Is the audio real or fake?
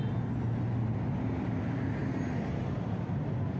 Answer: real